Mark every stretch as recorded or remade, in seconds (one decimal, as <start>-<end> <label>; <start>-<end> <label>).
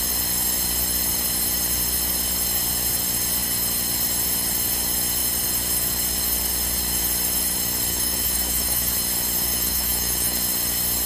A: 0.0-7.9 recorded; 7.9-8.9 remade; 8.9-9.5 recorded; 9.5-10.4 remade; 10.4-11.1 recorded